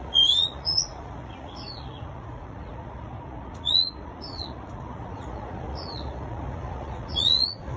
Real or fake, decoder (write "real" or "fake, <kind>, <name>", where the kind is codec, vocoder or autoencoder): fake, vocoder, Vocos